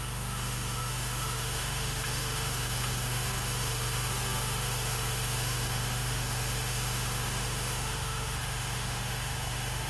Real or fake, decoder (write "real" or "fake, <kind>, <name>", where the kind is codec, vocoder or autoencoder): fake, autoencoder, DAC-VAE